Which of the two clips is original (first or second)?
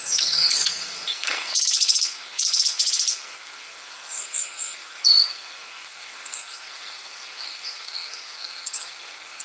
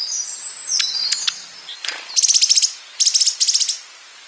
second